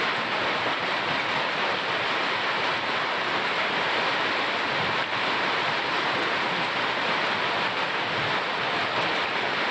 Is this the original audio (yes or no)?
yes